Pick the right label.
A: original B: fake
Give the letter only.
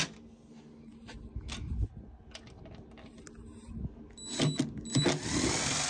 A